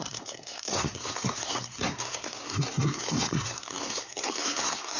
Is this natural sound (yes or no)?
no